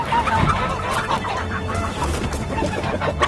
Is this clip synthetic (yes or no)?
no